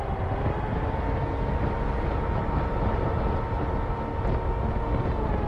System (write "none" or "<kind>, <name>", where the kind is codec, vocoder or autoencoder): none